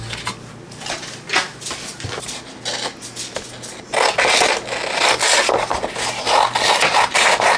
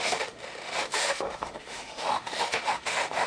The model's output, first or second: second